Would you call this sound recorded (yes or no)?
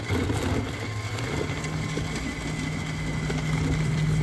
yes